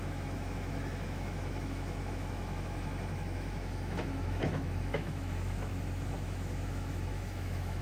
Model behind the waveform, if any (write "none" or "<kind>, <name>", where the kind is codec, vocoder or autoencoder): autoencoder, DAC-VAE